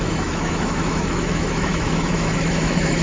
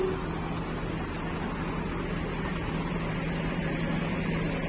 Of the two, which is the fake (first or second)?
first